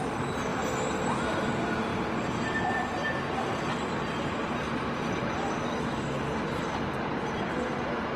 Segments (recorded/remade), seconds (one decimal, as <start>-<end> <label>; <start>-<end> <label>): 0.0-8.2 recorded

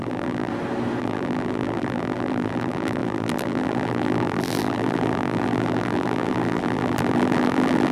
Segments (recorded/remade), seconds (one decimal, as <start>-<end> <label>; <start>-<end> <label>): 0.0-0.5 remade; 0.5-1.0 recorded; 1.0-7.9 remade

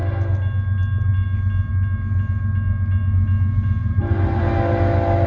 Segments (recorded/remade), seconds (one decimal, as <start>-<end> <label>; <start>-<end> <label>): 0.0-3.8 recorded; 3.8-4.4 remade; 4.4-5.3 recorded

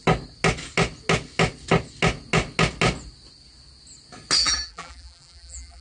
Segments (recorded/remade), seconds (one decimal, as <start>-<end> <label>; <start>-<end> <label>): 0.0-4.4 recorded; 4.4-5.8 remade

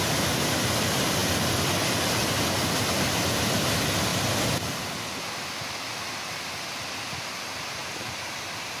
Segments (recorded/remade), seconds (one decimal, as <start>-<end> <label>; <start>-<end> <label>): 0.0-7.8 recorded; 7.8-8.8 remade

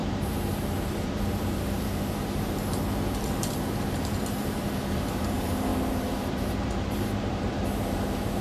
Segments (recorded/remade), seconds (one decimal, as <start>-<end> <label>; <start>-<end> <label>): 0.0-8.4 remade

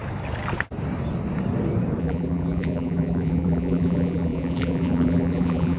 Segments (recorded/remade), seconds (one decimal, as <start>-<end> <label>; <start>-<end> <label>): 0.0-2.0 recorded; 2.0-5.8 remade

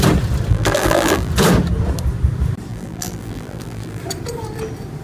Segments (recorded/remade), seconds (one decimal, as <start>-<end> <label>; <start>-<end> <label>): 0.0-0.5 recorded; 0.5-1.3 remade; 1.3-2.7 recorded; 2.7-4.0 remade; 4.0-5.0 recorded